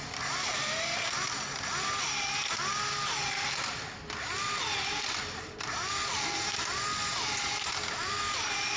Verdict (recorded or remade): recorded